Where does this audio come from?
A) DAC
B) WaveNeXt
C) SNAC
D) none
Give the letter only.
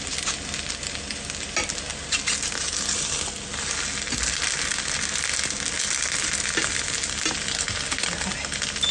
D